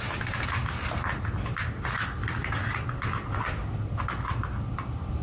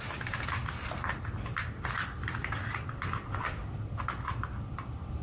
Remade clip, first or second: second